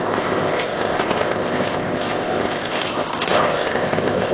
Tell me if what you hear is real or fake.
fake